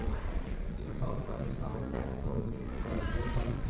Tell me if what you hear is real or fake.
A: fake